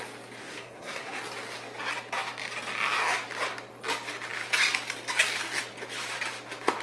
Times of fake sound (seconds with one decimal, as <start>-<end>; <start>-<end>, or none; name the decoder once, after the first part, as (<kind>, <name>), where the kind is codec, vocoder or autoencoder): 0.4-1.2 (codec, SNAC)